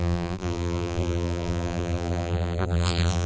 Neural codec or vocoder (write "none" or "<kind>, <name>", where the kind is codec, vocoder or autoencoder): vocoder, BigVGAN v2